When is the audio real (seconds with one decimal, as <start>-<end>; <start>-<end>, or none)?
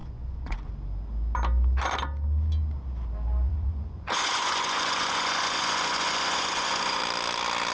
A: 0.7-3.5; 7.0-7.7